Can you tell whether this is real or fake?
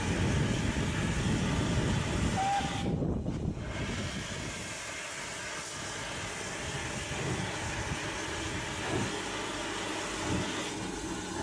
real